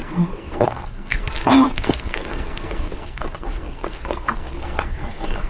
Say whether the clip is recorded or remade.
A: remade